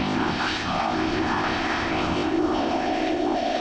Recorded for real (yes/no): no